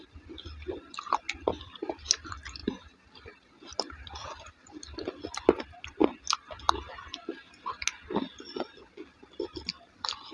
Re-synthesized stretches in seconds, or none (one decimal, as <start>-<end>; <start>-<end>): none